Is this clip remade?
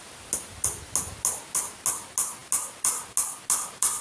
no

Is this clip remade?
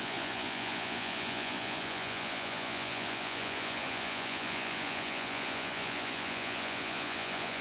yes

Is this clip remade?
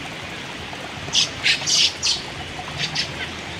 no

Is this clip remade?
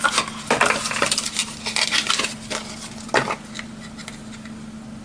no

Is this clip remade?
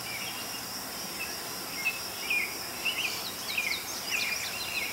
no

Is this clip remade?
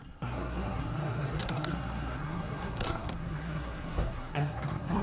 yes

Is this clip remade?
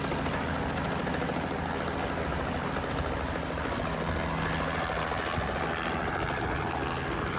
no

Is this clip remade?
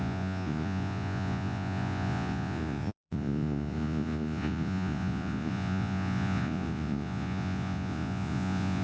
yes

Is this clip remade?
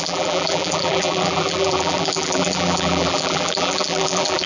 yes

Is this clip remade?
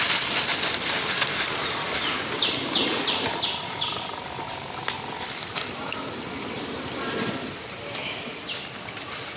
yes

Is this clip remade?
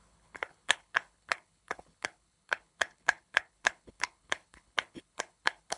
yes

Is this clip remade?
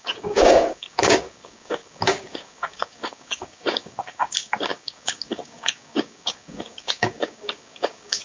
yes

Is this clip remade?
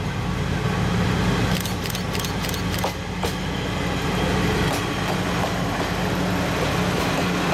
no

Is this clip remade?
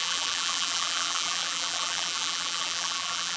yes